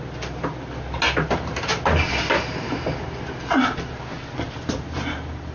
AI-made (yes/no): no